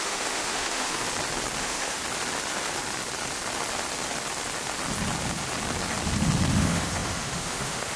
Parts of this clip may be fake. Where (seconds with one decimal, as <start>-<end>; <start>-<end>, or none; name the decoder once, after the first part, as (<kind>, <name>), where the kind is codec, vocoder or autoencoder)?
0.0-1.0 (autoencoder, DAC-VAE); 1.6-2.0; 6.5-8.0